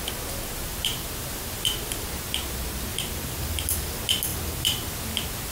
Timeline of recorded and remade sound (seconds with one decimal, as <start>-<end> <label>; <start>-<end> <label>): 0.0-0.7 recorded; 0.7-2.1 remade; 2.1-2.9 recorded; 2.9-3.6 remade; 3.6-4.3 recorded; 4.3-4.9 remade; 4.9-5.5 recorded